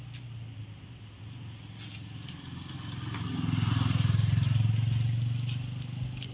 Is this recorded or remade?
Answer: recorded